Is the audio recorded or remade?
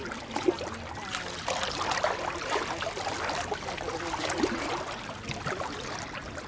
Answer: recorded